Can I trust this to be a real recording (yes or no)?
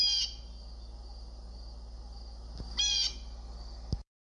yes